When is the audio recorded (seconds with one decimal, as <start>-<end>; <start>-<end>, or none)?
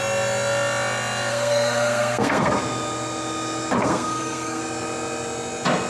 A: 0.0-1.3; 2.5-3.8; 4.6-5.9